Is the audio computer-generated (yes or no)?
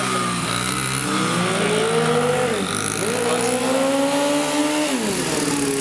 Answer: no